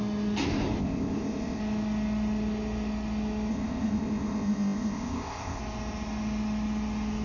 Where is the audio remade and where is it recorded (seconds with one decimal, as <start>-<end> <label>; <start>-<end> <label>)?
0.0-0.8 recorded; 0.8-1.6 remade; 1.6-3.5 recorded; 3.5-5.6 remade; 5.6-7.2 recorded